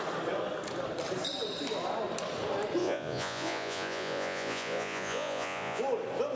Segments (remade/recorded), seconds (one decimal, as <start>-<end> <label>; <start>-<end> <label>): 0.0-2.8 recorded; 2.8-5.8 remade; 5.8-6.4 recorded